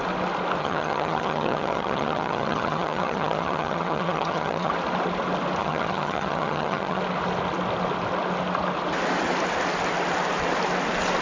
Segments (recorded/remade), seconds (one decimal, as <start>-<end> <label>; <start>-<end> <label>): 0.0-0.6 recorded; 0.6-4.7 remade; 4.7-5.6 recorded; 5.6-7.0 remade; 7.0-11.2 recorded